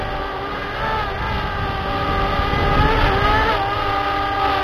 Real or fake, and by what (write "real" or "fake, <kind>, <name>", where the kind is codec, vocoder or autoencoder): real